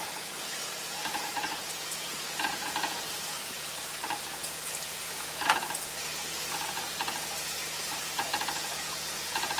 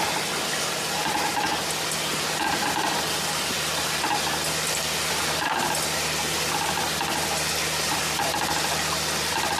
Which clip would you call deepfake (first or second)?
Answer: first